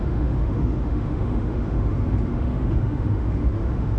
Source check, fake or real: fake